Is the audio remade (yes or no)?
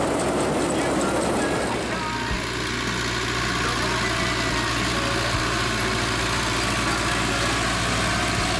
no